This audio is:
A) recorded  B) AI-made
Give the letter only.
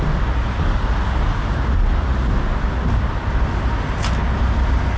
A